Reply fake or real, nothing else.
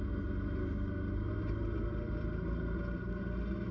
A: real